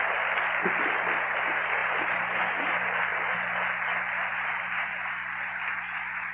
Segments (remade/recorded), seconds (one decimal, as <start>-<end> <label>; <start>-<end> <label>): 0.0-1.8 recorded; 1.8-2.5 remade; 2.5-6.3 recorded